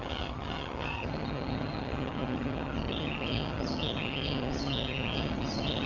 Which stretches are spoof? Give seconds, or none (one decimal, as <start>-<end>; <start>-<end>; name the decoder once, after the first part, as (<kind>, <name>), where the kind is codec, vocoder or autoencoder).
0.0-5.9 (vocoder, HiFi-GAN)